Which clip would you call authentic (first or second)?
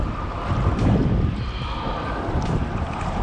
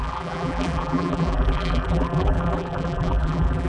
first